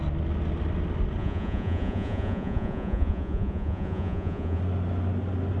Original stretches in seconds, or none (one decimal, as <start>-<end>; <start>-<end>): 0.0-1.2; 4.6-5.6